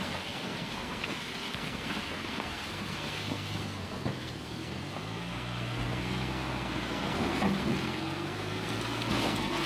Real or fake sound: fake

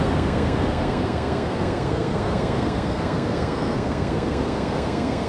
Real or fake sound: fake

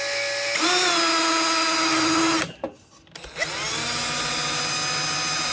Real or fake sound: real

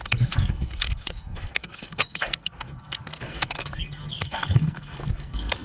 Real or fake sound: fake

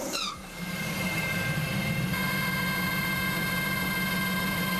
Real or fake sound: fake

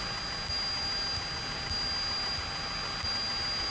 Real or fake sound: real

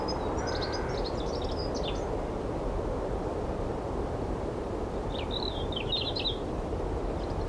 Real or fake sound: real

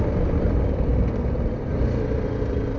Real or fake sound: fake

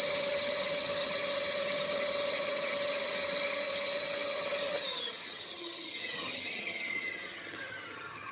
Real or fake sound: fake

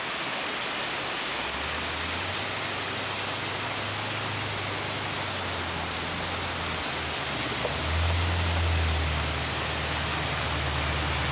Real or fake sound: real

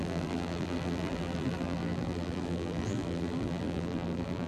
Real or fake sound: fake